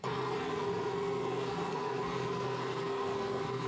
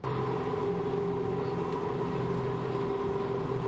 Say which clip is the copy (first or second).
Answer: first